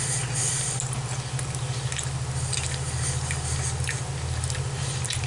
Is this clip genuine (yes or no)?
yes